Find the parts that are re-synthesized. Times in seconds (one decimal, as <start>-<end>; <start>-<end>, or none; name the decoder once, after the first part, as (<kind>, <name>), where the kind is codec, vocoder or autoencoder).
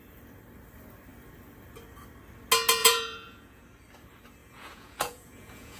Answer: 2.8-3.6 (vocoder, Vocos); 4.4-5.8